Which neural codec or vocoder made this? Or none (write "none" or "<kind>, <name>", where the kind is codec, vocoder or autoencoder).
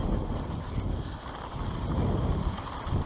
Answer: none